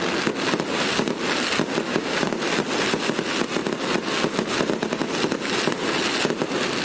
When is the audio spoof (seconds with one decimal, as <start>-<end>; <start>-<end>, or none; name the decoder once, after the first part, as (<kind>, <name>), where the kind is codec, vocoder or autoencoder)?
1.9-2.4 (codec, DAC)